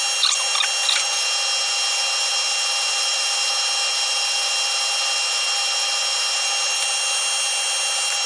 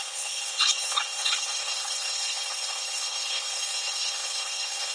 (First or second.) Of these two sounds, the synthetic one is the second